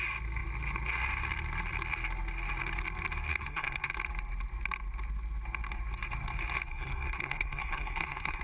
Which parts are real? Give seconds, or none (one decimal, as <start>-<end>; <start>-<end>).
0.0-3.3; 3.9-6.7